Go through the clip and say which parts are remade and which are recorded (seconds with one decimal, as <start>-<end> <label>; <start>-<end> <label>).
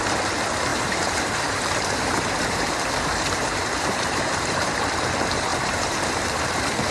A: 0.0-0.7 recorded; 0.7-4.8 remade; 4.8-5.5 recorded; 5.5-6.5 remade; 6.5-6.9 recorded